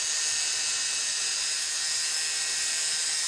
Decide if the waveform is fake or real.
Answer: real